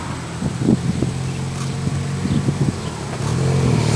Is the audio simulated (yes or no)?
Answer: yes